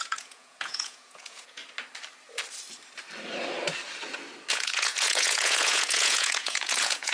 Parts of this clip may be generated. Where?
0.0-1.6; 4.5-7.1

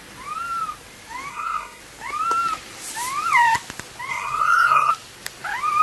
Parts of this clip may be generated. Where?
1.3-1.8; 4.1-4.9

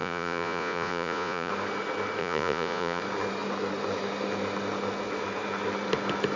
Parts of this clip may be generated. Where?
0.0-1.5; 2.2-3.0

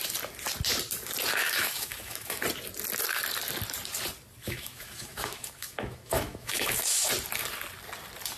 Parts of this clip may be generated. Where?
1.3-2.4; 4.4-7.1

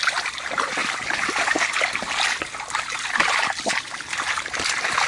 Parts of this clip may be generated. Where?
none